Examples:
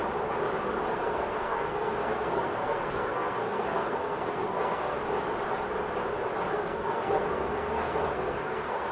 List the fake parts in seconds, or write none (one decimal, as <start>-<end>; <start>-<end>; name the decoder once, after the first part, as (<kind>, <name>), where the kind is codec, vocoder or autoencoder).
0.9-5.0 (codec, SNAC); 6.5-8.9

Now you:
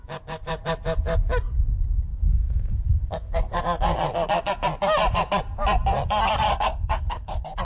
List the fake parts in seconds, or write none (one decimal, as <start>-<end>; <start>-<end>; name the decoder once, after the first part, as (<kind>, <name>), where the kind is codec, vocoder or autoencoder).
2.1-3.6 (codec, SNAC); 6.5-7.6

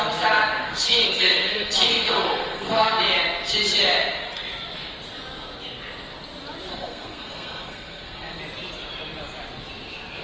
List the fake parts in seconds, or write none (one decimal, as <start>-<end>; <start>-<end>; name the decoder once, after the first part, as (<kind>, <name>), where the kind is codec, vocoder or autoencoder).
0.6-3.0 (codec, SNAC); 6.7-8.4